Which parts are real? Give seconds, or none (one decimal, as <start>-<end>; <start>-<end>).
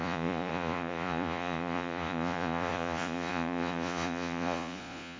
none